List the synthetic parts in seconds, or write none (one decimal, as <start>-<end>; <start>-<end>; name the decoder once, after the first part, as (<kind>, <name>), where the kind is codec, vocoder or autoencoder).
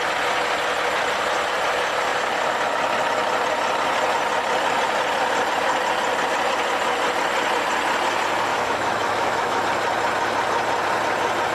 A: 8.5-9.6 (autoencoder, DAC-VAE)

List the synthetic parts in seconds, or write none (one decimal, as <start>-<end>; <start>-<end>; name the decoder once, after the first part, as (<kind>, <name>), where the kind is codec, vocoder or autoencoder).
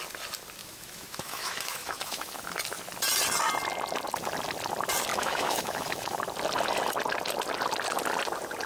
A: 0.6-2.4 (autoencoder, DAC-VAE); 5.1-6.2